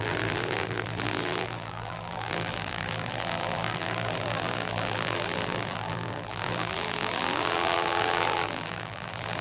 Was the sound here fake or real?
fake